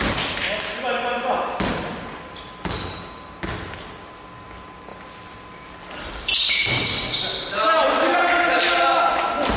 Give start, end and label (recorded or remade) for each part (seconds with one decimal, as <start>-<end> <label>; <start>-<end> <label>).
0.0-4.9 recorded; 4.9-6.1 remade; 6.1-9.6 recorded